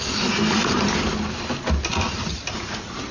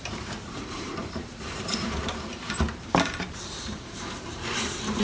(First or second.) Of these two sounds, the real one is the first